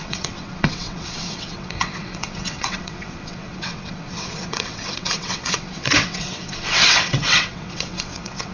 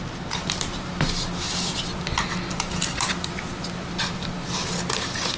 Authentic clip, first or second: second